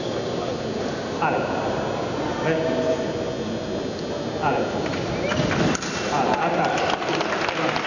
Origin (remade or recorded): recorded